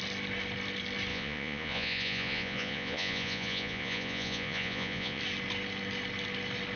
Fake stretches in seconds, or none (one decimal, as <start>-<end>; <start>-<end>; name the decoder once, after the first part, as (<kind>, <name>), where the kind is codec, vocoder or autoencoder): 1.1-5.2 (vocoder, Vocos)